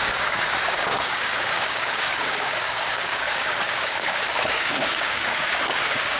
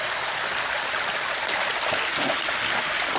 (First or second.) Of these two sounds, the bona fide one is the second